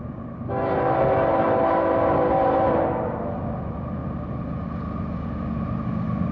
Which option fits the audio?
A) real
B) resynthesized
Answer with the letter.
A